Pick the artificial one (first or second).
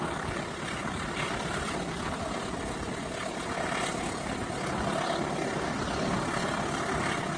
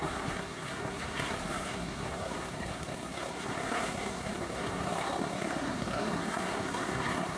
second